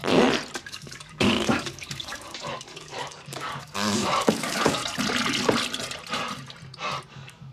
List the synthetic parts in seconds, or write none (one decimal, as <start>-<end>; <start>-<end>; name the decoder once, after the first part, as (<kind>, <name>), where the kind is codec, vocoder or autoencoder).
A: 0.6-4.8 (codec, DAC); 7.1-7.5